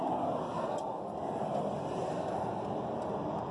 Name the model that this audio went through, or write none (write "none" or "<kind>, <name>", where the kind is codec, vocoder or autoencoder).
none